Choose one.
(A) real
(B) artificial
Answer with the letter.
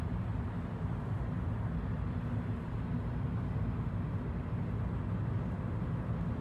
A